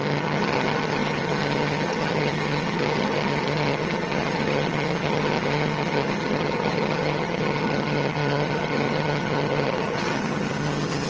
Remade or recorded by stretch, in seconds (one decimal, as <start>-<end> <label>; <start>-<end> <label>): 0.0-11.1 remade